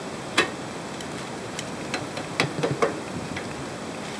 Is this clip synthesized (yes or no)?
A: yes